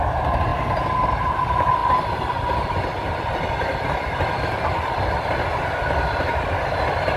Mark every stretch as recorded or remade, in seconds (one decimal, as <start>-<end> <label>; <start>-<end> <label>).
0.0-7.2 recorded